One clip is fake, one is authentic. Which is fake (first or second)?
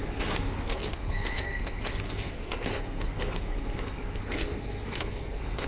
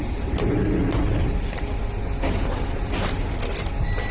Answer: first